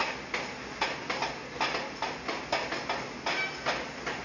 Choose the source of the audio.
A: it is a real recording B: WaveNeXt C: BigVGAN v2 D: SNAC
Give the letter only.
A